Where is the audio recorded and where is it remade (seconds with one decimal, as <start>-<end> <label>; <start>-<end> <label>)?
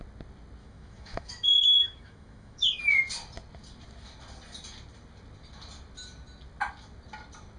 0.0-0.6 recorded; 0.6-2.8 remade; 2.8-7.6 recorded